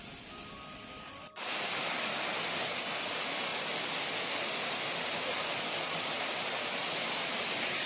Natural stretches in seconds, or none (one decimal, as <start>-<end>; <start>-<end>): 0.0-7.9